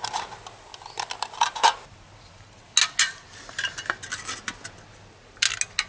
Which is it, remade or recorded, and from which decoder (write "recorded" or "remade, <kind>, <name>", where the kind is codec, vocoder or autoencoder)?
recorded